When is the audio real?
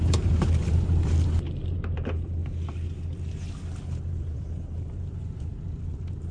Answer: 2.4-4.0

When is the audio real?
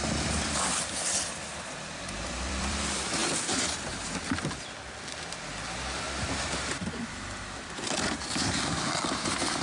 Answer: 0.0-0.6; 3.2-6.4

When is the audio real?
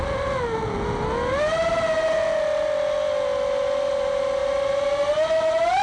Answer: 0.0-5.8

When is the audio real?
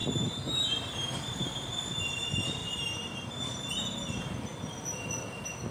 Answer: 1.6-2.6; 3.3-5.7